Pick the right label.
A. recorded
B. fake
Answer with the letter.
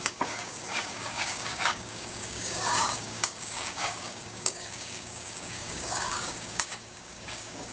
B